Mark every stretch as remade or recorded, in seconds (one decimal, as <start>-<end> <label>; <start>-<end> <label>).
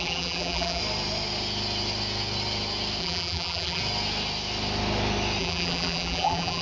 0.0-0.8 remade; 0.8-3.0 recorded; 3.0-3.8 remade; 3.8-5.4 recorded; 5.4-6.6 remade